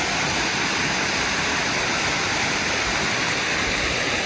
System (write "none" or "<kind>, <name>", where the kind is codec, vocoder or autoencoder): none